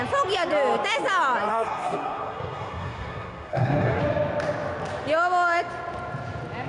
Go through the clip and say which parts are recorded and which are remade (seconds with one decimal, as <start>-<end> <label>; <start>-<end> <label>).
0.0-1.5 recorded; 1.5-4.0 remade; 4.0-6.7 recorded